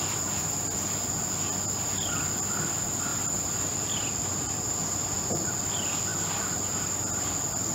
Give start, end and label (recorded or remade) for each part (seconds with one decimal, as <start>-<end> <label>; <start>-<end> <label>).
0.0-3.1 recorded; 3.1-4.1 remade; 4.1-7.7 recorded